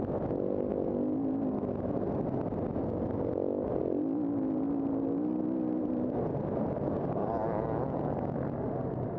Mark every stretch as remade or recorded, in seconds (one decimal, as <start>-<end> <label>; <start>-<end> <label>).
0.0-9.2 recorded